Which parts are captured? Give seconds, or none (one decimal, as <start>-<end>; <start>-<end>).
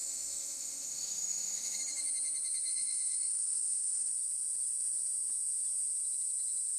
1.8-2.7; 4.1-6.8